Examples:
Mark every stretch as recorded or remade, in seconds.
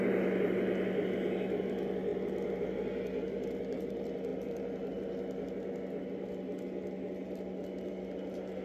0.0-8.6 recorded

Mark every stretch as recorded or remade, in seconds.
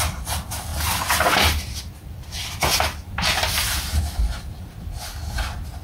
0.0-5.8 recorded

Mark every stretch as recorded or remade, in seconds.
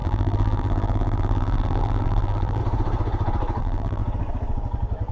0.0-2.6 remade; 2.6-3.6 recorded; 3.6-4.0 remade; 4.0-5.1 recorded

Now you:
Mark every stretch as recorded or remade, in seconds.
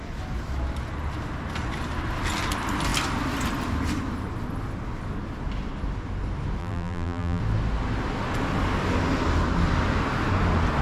0.0-6.6 recorded; 6.6-7.4 remade; 7.4-10.8 recorded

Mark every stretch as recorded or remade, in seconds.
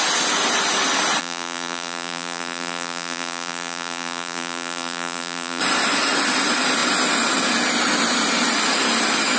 0.0-1.2 recorded; 1.2-5.6 remade; 5.6-9.4 recorded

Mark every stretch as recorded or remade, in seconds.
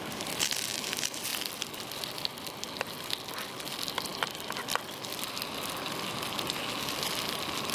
0.0-7.7 recorded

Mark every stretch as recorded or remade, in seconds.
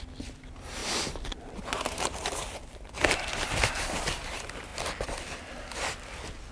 0.0-4.7 remade; 4.7-6.5 recorded